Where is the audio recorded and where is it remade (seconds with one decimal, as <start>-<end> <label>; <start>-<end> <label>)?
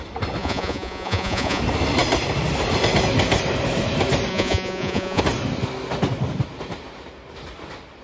0.0-0.4 recorded; 0.4-1.6 remade; 1.6-4.3 recorded; 4.3-5.2 remade; 5.2-8.0 recorded